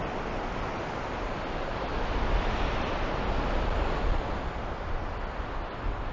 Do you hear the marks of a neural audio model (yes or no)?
no